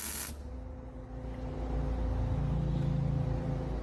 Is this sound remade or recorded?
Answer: recorded